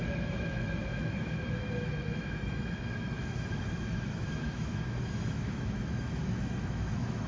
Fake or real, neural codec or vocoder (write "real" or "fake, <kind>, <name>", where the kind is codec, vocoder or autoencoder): fake, autoencoder, DAC-VAE